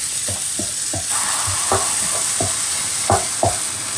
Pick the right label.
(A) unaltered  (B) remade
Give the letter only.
A